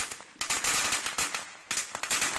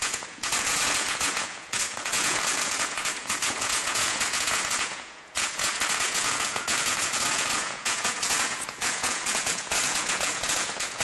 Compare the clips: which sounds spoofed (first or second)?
second